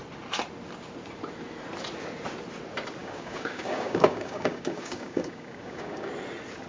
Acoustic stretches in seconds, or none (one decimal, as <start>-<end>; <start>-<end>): 0.0-3.0; 6.1-6.7